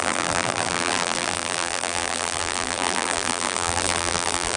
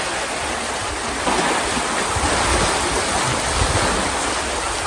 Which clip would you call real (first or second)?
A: second